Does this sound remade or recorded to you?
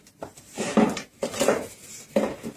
remade